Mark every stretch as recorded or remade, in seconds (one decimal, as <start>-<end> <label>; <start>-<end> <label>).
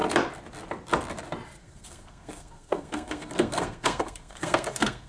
0.0-1.6 recorded; 1.6-5.1 remade